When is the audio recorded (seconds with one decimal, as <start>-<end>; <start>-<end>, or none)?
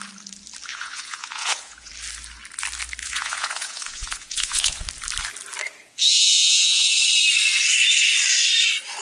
0.0-0.7; 1.9-3.0; 4.8-5.8; 7.0-9.0